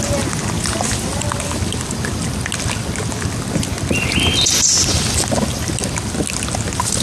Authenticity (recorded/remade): recorded